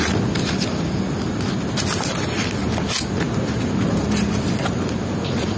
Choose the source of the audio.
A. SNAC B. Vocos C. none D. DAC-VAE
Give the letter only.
C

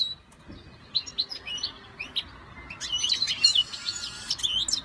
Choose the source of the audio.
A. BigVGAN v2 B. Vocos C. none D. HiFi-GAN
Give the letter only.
C